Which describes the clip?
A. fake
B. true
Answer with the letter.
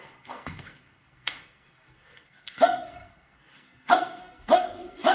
A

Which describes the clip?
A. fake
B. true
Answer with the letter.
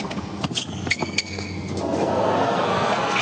A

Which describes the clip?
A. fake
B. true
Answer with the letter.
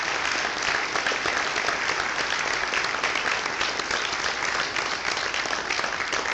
B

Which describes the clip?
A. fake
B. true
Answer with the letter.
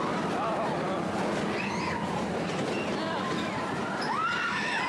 B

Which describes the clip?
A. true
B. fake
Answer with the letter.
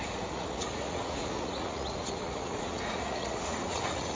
B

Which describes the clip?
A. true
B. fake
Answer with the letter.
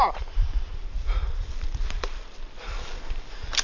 B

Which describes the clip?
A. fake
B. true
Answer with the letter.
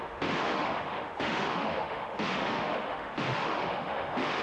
A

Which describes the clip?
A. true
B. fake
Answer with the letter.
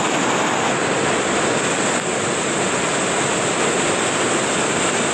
A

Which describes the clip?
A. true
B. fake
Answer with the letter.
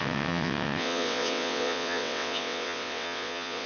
B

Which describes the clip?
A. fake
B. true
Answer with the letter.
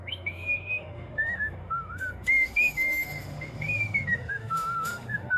A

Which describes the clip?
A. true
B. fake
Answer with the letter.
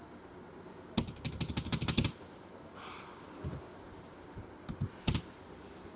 A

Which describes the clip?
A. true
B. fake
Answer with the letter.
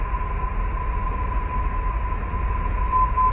A